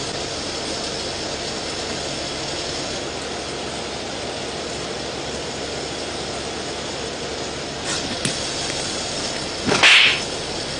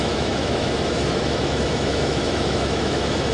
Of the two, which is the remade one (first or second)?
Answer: second